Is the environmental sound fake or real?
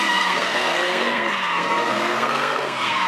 fake